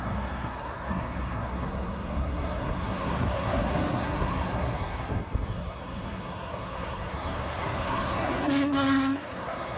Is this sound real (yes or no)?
no